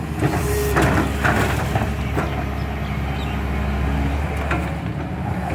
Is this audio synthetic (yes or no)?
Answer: no